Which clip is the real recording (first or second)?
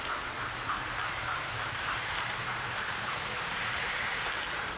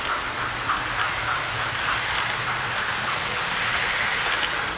second